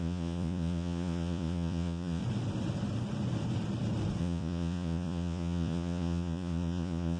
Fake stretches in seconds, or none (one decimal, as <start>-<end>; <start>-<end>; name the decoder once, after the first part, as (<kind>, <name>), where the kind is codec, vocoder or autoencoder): 0.0-2.2 (vocoder, Vocos); 4.2-7.2